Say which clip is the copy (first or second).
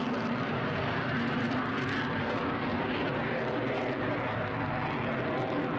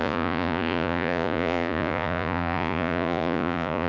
second